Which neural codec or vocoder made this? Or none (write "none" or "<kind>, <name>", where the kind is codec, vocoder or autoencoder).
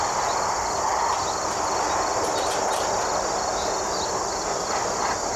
none